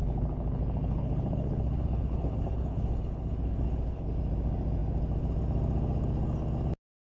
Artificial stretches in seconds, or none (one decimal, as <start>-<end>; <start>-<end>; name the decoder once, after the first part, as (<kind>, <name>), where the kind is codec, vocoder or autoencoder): 0.0-4.1 (codec, HILCodec)